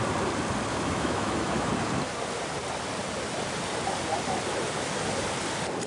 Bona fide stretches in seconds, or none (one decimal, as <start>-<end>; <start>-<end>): 0.0-0.7; 1.7-5.9